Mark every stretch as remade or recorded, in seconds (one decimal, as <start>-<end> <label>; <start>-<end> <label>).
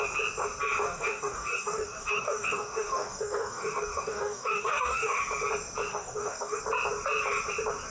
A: 0.0-0.8 recorded; 0.8-5.2 remade; 5.2-5.9 recorded; 5.9-6.6 remade; 6.6-7.9 recorded